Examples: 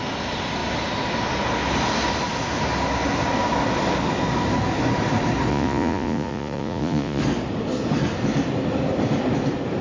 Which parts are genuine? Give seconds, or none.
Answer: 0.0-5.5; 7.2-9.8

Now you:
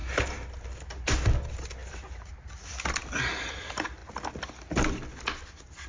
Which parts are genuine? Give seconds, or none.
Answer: 0.0-5.9

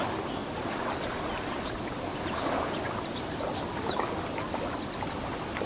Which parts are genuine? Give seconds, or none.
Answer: 0.0-5.7